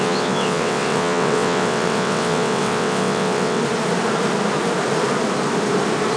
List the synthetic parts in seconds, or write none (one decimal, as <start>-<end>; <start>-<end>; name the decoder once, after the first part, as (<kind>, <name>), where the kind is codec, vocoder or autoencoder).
0.0-3.6 (vocoder, WaveNeXt)